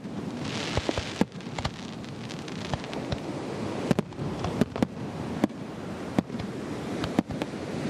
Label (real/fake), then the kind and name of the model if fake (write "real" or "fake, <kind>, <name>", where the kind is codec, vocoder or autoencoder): real